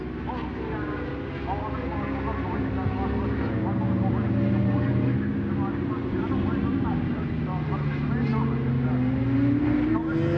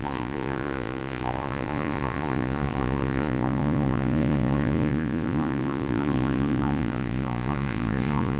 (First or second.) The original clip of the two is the first